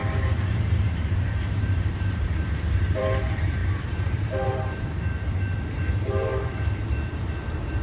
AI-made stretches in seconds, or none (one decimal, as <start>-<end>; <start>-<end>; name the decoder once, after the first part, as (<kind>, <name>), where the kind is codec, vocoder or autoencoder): 0.0-7.8 (vocoder, BigVGAN v2)